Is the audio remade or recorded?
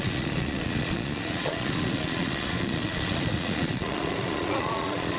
remade